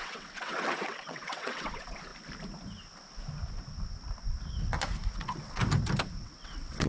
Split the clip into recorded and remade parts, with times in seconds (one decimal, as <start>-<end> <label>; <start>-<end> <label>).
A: 0.0-2.1 remade; 2.1-5.1 recorded; 5.1-5.6 remade; 5.6-6.2 recorded; 6.2-6.9 remade